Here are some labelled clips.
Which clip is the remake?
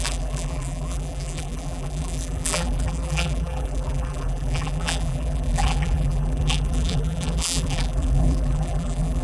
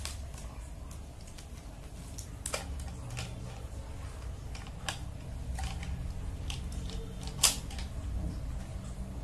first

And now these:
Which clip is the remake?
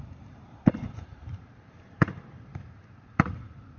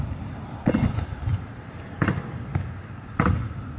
first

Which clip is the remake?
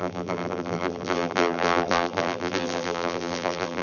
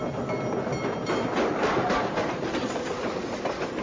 first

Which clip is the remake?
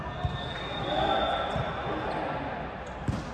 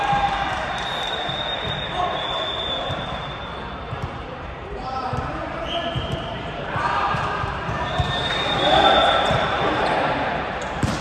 second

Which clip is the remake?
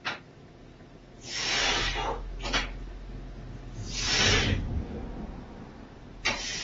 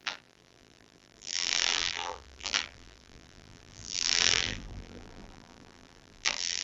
second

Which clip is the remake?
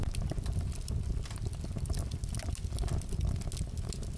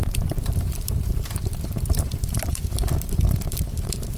second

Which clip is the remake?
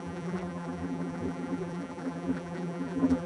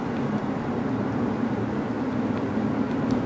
first